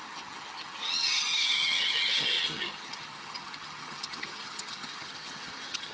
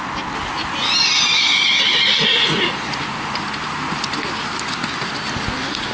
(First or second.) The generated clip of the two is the first